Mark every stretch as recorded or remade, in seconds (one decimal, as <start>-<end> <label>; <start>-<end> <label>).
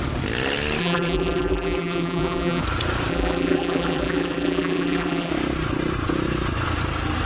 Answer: 0.0-0.8 recorded; 0.8-2.6 remade; 2.6-3.1 recorded; 3.1-5.3 remade; 5.3-7.3 recorded